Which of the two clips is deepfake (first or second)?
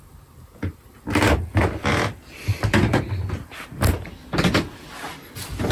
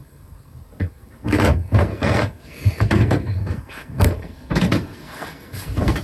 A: second